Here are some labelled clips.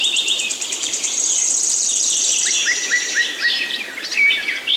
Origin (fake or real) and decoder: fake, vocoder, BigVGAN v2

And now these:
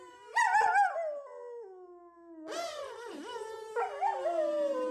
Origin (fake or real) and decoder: real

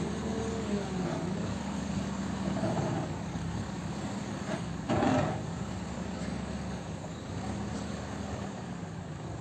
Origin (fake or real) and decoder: fake, codec, DAC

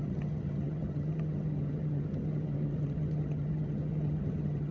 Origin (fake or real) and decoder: fake, vocoder, HiFi-GAN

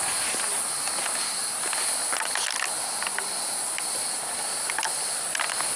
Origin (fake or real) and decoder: real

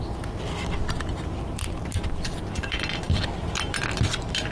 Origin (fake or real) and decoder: real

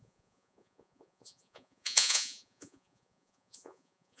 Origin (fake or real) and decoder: fake, vocoder, Vocos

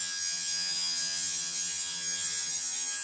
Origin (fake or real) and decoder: fake, vocoder, HiFi-GAN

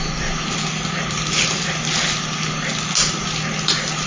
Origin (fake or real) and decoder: real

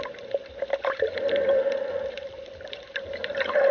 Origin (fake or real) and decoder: fake, vocoder, BigVGAN v2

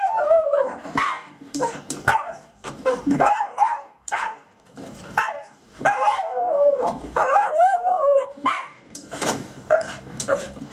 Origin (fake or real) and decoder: fake, codec, DAC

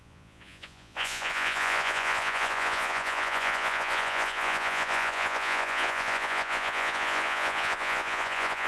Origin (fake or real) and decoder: fake, vocoder, Vocos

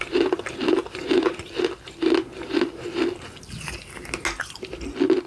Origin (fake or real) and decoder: real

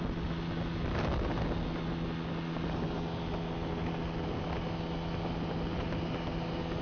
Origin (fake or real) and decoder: real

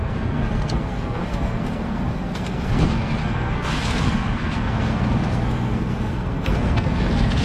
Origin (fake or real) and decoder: fake, codec, SNAC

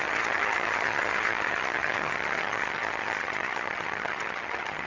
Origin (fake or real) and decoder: fake, vocoder, HiFi-GAN